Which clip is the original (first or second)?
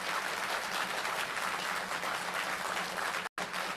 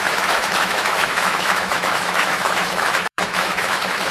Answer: first